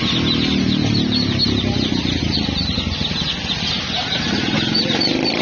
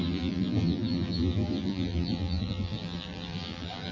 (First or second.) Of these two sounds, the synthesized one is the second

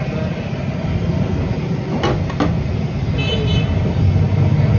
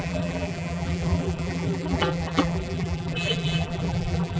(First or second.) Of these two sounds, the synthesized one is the second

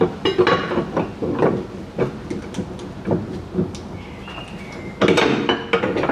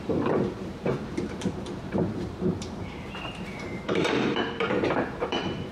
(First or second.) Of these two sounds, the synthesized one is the second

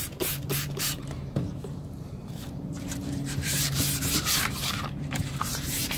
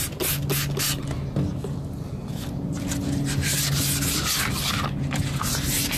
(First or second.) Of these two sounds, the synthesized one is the first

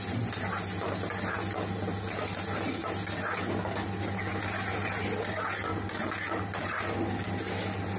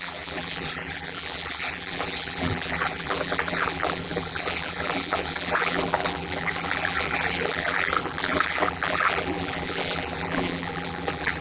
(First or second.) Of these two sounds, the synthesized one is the second